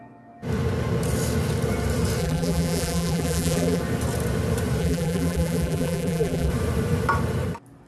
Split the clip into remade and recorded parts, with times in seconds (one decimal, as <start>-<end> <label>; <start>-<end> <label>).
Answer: 0.0-2.2 recorded; 2.2-3.8 remade; 3.8-4.8 recorded; 4.8-6.5 remade; 6.5-7.9 recorded